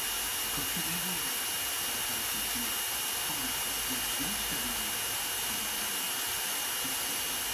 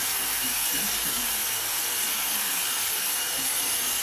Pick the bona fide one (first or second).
first